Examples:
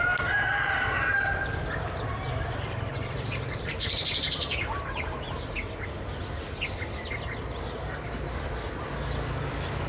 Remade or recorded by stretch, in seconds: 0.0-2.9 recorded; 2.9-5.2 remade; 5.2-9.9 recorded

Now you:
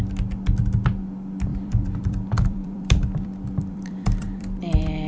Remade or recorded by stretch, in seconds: 0.0-1.5 recorded; 1.5-4.6 remade; 4.6-5.1 recorded

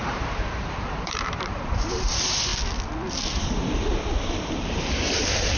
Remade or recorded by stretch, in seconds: 0.0-2.5 remade; 2.5-4.5 recorded; 4.5-5.6 remade

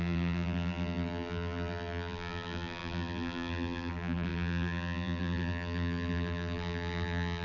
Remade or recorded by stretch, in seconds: 0.0-7.4 remade

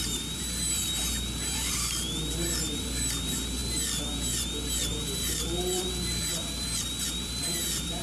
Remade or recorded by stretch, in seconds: 0.0-3.6 remade; 3.6-4.9 recorded; 4.9-8.0 remade

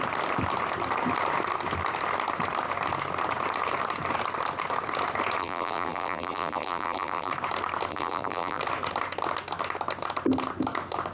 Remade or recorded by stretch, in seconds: 0.0-5.4 recorded; 5.4-7.3 remade; 7.3-7.9 recorded; 7.9-8.6 remade; 8.6-11.1 recorded

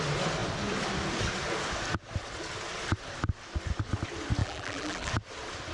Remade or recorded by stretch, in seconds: 0.0-4.4 recorded; 4.4-5.1 remade; 5.1-5.7 recorded

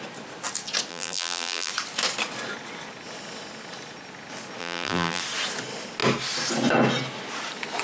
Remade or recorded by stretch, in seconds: 0.0-0.9 recorded; 0.9-1.7 remade; 1.7-4.6 recorded; 4.6-5.2 remade; 5.2-7.8 recorded